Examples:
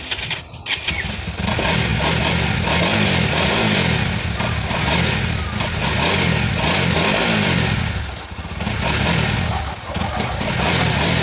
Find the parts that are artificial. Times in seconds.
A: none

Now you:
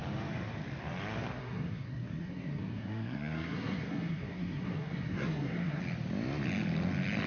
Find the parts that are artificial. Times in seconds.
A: 1.4-5.8 (codec, SNAC)

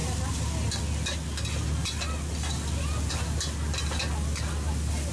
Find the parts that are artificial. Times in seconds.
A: none

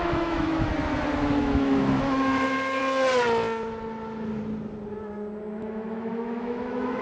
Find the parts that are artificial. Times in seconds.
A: 0.0-0.7 (autoencoder, DAC-VAE); 1.4-2.8; 5.6-7.0